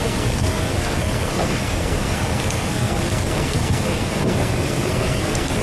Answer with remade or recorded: remade